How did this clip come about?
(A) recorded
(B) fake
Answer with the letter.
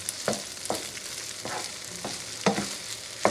A